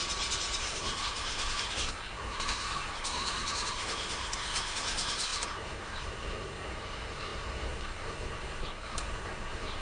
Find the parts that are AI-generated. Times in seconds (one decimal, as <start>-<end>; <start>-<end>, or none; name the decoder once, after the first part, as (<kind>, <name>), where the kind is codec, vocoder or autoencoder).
0.6-9.8 (codec, SNAC)